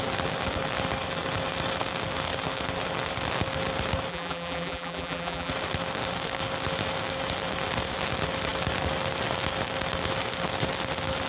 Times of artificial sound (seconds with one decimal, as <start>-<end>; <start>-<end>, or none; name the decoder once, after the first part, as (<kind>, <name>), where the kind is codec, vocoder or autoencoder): 4.1-5.5 (vocoder, BigVGAN v2)